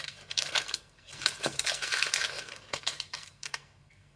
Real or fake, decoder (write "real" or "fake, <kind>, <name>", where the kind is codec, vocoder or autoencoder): fake, codec, SNAC